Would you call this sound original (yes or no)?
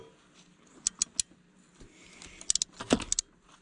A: yes